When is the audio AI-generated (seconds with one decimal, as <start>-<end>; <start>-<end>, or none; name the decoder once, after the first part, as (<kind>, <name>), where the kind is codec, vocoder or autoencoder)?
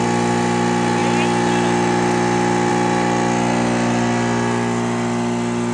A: none